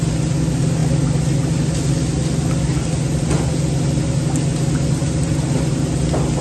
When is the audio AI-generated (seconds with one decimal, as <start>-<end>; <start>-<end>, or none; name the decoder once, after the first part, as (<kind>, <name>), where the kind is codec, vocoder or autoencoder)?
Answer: none